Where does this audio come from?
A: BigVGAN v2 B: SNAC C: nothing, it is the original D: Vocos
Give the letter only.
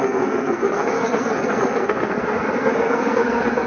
B